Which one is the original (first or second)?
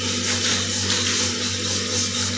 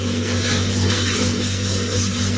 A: first